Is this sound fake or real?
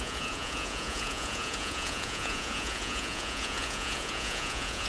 fake